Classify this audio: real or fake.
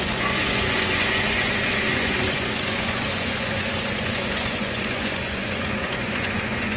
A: fake